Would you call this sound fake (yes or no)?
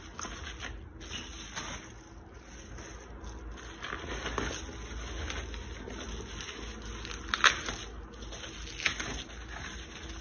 no